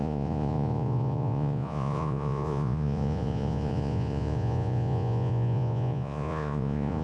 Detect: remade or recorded remade